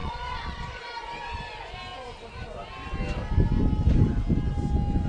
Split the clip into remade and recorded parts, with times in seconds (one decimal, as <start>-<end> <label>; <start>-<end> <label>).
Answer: 0.0-0.8 remade; 0.8-5.1 recorded